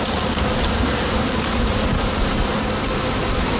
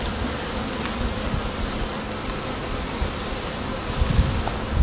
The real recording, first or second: second